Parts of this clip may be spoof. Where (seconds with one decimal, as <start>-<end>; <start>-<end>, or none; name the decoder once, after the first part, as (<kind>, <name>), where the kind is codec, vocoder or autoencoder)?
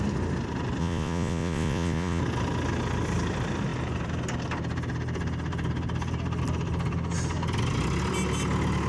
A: 0.8-2.2 (vocoder, Vocos)